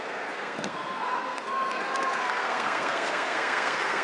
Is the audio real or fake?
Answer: fake